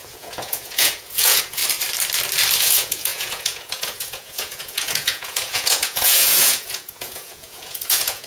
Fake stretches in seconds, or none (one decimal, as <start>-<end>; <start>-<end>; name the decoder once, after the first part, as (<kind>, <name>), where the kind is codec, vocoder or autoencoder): 0.0-1.6 (vocoder, Vocos); 2.6-8.3